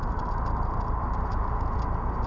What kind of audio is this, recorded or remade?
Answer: recorded